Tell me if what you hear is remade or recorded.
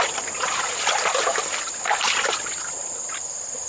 recorded